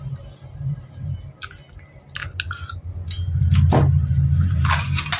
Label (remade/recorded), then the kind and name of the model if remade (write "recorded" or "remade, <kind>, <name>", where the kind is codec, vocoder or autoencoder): recorded